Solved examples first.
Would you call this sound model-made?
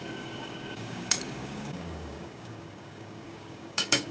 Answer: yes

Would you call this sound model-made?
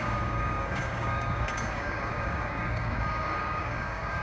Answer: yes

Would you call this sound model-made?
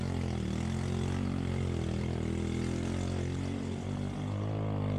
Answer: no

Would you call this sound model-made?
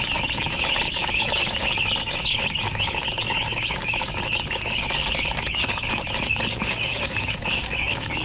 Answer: yes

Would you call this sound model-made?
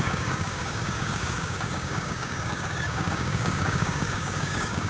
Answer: yes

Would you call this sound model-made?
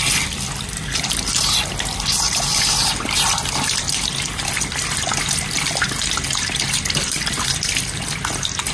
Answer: no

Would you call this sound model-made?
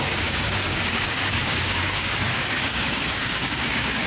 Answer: yes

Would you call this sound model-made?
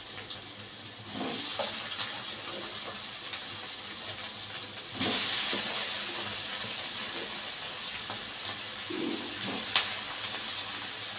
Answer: no